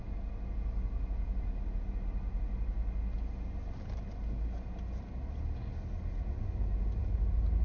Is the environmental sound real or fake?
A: real